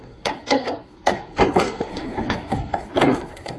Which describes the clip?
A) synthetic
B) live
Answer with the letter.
A